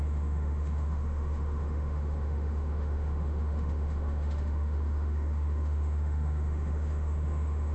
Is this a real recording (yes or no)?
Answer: no